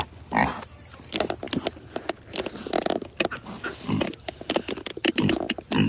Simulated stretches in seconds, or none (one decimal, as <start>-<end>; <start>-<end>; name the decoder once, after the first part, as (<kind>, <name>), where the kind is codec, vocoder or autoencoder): none